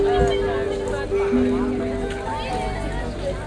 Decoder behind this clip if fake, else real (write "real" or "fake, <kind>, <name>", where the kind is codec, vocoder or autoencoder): real